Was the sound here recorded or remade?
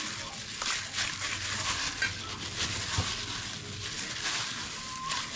recorded